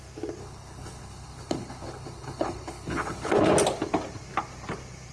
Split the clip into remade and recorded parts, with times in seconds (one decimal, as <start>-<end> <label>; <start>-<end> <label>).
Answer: 0.0-0.4 recorded; 0.4-3.5 remade; 3.5-5.1 recorded